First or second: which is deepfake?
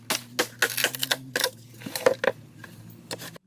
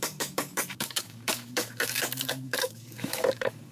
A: second